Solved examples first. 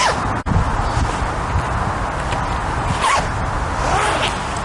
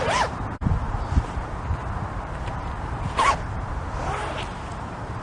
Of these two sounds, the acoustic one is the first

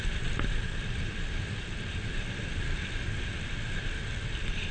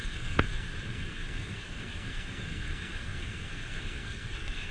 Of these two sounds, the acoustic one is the first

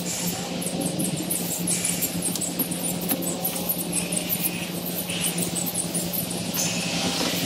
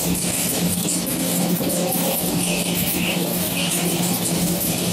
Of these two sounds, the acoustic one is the first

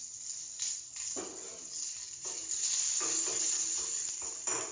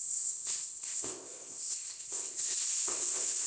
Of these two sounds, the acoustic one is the first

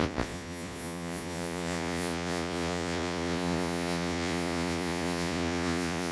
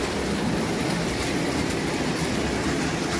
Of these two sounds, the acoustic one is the second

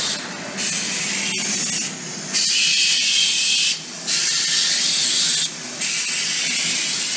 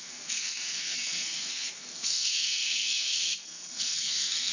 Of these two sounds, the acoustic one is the first